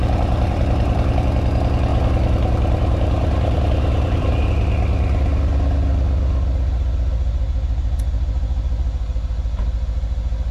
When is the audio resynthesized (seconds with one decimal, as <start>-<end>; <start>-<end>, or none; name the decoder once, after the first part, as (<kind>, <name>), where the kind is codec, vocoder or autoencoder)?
0.0-1.3 (vocoder, BigVGAN v2); 1.9-4.5